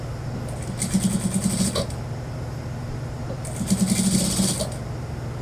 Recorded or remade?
recorded